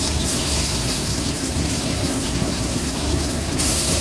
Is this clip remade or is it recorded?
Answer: remade